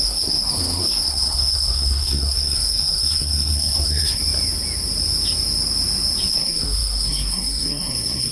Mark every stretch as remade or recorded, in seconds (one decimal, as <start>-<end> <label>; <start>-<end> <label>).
0.0-4.2 remade; 4.2-6.3 recorded; 6.3-8.3 remade